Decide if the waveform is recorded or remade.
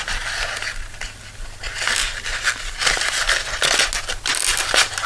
recorded